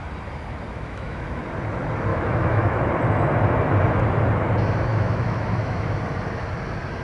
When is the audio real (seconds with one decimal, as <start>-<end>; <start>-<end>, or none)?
0.0-0.7; 1.4-2.1; 2.9-4.9; 5.9-7.0